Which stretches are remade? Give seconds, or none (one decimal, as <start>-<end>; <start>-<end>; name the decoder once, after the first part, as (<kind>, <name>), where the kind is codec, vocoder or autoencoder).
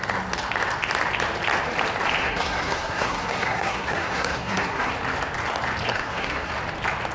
2.2-4.9 (codec, SNAC); 5.9-6.5